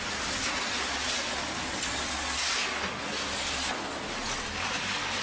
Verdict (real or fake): real